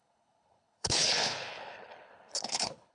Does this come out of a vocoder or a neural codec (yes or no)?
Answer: yes